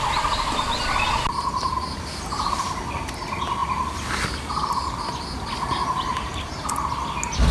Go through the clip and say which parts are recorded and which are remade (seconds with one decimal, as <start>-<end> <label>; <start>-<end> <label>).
0.0-6.1 recorded; 6.1-6.7 remade; 6.7-7.5 recorded